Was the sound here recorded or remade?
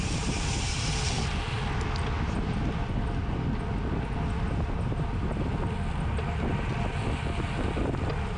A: recorded